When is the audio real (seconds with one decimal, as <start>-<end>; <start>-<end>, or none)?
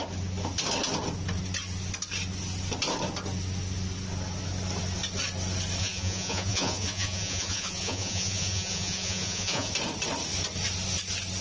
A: 0.0-5.8; 9.7-11.4